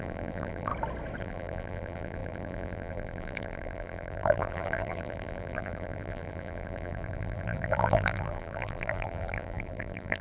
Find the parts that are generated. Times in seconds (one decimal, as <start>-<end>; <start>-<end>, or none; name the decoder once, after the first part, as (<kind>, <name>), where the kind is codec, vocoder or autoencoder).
0.0-0.7 (vocoder, BigVGAN v2); 1.2-10.2